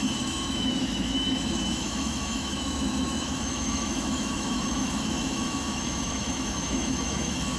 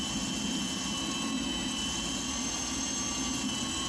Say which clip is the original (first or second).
second